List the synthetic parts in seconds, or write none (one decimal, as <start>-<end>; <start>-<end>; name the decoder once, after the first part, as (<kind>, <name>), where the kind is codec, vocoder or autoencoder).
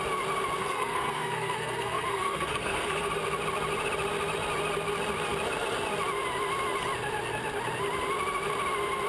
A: 0.6-3.1 (codec, SNAC)